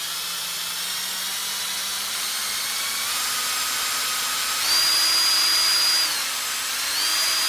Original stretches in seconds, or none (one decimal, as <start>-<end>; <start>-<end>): 0.0-1.9; 4.6-6.1; 6.9-7.5

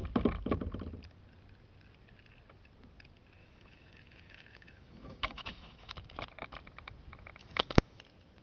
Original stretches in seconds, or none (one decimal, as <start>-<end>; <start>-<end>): 0.0-3.4; 5.9-7.4; 8.0-8.4

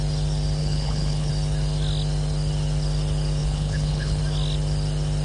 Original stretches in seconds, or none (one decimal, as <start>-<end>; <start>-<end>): 0.0-0.6; 1.3-3.4; 4.2-5.2

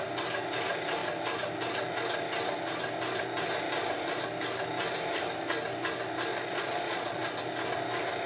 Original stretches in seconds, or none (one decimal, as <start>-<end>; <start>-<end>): 0.0-6.3; 7.2-8.3

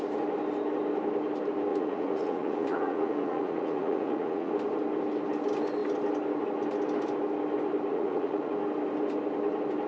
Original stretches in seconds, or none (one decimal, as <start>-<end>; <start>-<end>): 0.0-1.7; 4.5-7.9; 8.5-9.9

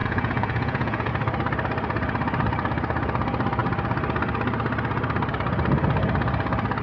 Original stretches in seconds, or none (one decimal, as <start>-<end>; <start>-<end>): 1.1-6.8

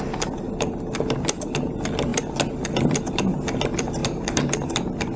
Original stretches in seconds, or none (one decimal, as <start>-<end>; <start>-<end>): 0.0-4.0; 4.8-5.2